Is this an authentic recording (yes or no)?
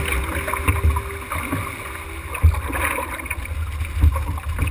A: yes